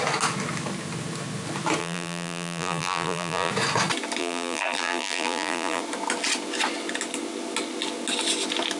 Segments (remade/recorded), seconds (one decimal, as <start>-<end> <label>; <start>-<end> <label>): 0.0-1.8 recorded; 1.8-3.5 remade; 3.5-4.2 recorded; 4.2-5.8 remade; 5.8-8.8 recorded